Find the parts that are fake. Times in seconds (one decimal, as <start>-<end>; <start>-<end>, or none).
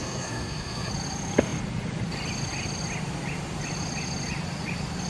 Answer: 0.0-0.9